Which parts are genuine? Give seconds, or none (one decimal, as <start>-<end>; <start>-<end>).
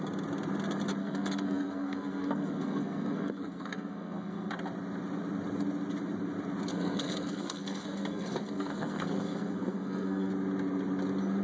0.0-1.0; 4.5-6.7; 10.3-11.4